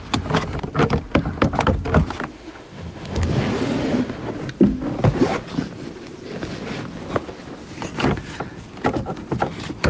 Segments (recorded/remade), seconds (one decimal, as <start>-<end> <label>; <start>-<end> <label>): 0.0-2.3 recorded; 2.3-3.2 remade; 3.2-3.8 recorded; 3.8-4.3 remade; 4.3-9.9 recorded